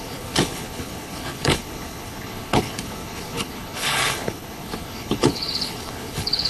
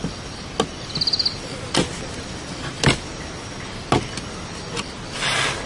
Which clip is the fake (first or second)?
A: first